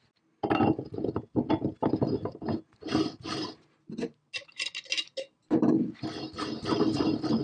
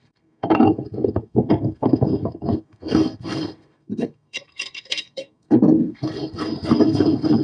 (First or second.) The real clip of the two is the first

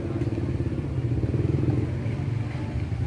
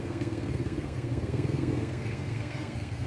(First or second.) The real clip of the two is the first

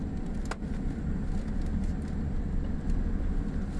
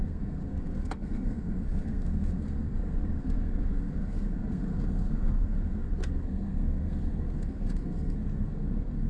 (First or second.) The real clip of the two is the first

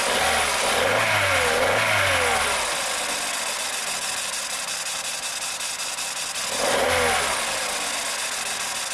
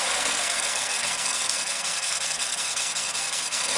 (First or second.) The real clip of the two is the first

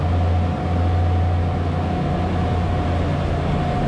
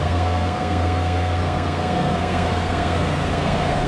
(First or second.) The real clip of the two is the first